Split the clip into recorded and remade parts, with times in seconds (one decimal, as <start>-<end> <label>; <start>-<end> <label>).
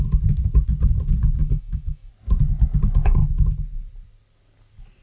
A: 0.0-1.4 recorded; 1.4-2.1 remade; 2.1-5.0 recorded